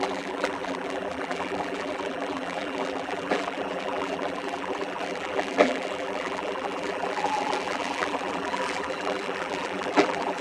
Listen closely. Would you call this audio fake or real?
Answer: fake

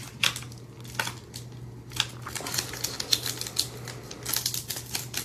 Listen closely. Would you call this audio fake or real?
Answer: real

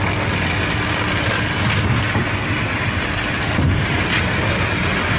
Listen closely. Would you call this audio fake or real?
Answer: real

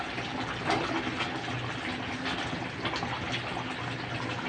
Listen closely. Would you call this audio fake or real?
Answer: real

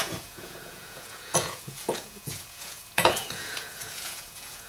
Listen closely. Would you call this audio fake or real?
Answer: fake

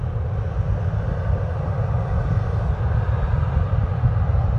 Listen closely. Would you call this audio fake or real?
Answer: real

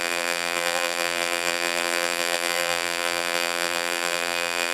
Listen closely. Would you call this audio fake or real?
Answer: fake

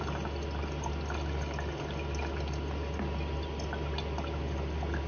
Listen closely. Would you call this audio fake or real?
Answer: real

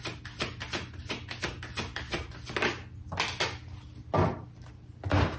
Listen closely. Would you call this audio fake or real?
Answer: real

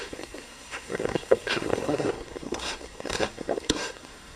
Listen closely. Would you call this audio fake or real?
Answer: fake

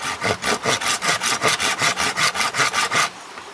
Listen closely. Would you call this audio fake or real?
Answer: real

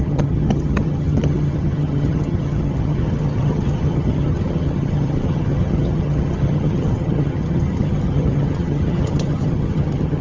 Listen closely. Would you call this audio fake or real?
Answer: fake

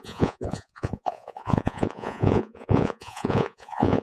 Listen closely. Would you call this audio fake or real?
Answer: fake